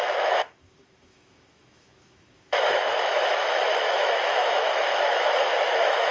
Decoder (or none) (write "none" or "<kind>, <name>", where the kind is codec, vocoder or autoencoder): autoencoder, DAC-VAE